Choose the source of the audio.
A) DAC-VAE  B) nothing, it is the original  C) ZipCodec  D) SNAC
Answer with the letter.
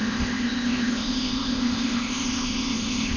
C